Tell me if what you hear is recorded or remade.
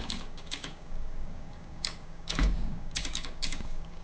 remade